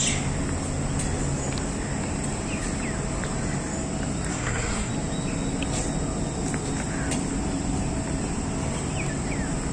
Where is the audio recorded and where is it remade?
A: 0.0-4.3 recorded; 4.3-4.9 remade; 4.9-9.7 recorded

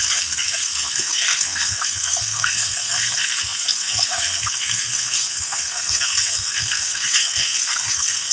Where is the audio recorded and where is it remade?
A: 0.0-8.3 remade

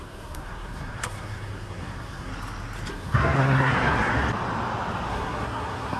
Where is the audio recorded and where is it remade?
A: 0.0-2.3 remade; 2.3-2.9 recorded; 2.9-4.1 remade; 4.1-5.1 recorded; 5.1-6.0 remade

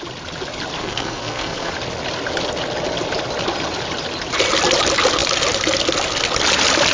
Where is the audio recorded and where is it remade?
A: 0.0-0.8 recorded; 0.8-1.7 remade; 1.7-6.9 recorded

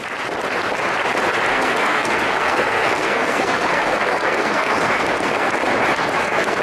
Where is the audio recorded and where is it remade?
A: 0.0-1.5 recorded; 1.5-5.5 remade; 5.5-6.0 recorded; 6.0-6.6 remade

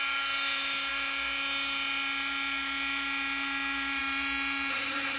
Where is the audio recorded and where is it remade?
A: 0.0-4.7 recorded; 4.7-5.2 remade

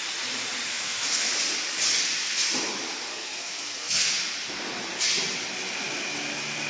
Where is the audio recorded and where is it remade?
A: 0.0-0.7 recorded; 0.7-1.3 remade; 1.3-3.1 recorded; 3.1-4.1 remade; 4.1-6.7 recorded